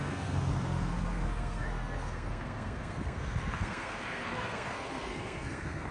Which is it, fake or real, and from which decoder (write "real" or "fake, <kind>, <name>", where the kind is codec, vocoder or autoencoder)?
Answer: fake, codec, SNAC